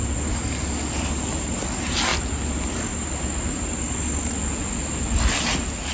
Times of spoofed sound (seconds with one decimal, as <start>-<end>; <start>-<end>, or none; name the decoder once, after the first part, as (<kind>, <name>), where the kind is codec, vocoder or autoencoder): none